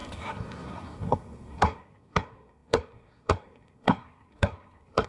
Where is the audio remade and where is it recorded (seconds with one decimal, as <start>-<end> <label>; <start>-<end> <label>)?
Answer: 0.0-5.1 remade